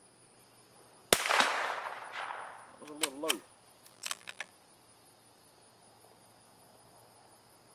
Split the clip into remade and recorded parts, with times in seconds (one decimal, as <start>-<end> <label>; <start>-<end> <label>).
0.0-3.9 recorded; 3.9-4.5 remade; 4.5-7.7 recorded